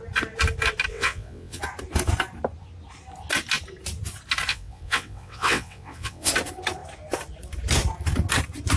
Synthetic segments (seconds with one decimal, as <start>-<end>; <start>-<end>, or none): 0.9-1.6; 4.5-6.3